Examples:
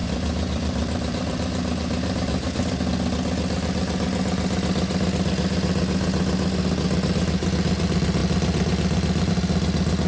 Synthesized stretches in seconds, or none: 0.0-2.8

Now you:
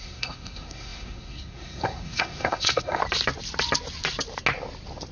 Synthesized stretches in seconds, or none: 0.0-3.0

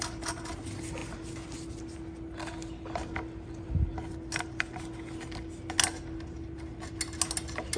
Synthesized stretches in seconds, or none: none

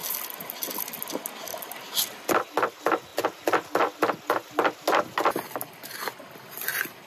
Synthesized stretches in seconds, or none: none

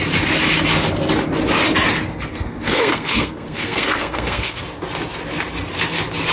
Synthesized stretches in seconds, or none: 2.3-4.6